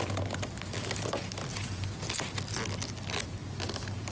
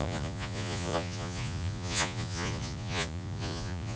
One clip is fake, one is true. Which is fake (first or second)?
second